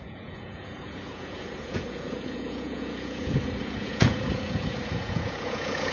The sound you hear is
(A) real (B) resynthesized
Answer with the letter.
B